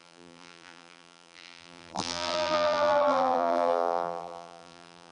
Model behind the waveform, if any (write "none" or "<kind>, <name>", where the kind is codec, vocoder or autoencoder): vocoder, BigVGAN v2